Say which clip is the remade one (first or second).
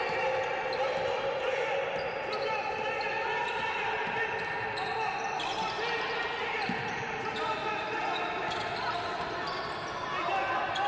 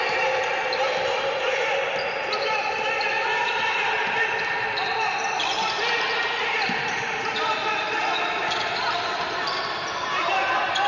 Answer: second